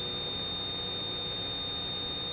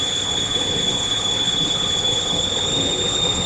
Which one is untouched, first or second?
first